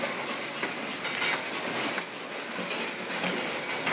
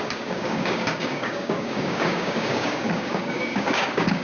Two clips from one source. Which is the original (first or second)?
first